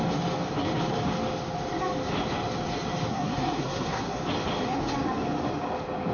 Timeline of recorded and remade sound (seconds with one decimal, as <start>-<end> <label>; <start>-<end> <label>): 0.0-3.1 recorded; 3.1-4.2 remade; 4.2-6.1 recorded

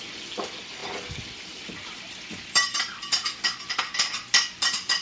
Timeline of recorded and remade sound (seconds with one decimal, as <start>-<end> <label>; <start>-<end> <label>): 0.0-5.0 recorded

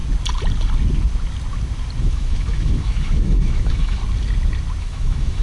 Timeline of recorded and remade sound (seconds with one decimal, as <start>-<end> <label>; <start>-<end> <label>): 0.0-2.0 recorded; 2.0-4.0 remade; 4.0-4.8 recorded; 4.8-5.4 remade

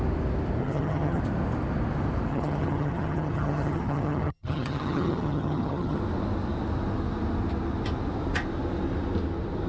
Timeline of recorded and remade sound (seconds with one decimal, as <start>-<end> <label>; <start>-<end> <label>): 0.0-0.6 recorded; 0.6-1.2 remade; 1.2-2.3 recorded; 2.3-6.0 remade; 6.0-9.7 recorded

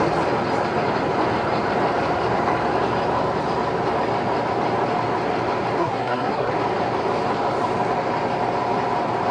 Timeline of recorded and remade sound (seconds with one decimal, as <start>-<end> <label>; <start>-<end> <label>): 0.0-5.8 recorded; 5.8-6.5 remade; 6.5-9.3 recorded

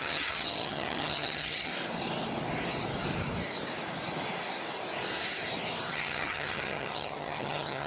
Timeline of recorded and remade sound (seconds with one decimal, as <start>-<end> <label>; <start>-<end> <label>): 0.0-1.7 remade; 1.7-5.9 recorded; 5.9-7.9 remade

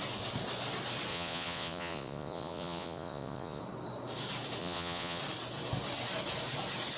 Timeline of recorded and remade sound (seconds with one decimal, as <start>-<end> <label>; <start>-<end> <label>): 0.0-1.1 recorded; 1.1-3.6 remade; 3.6-4.6 recorded; 4.6-5.2 remade; 5.2-7.0 recorded

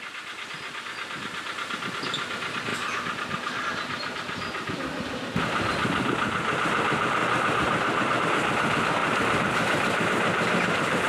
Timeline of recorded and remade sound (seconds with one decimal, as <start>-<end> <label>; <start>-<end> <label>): 0.0-7.2 recorded; 7.2-8.2 remade; 8.2-9.0 recorded; 9.0-11.1 remade